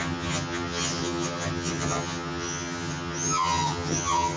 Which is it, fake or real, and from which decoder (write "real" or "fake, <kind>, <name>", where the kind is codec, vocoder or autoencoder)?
fake, vocoder, HiFi-GAN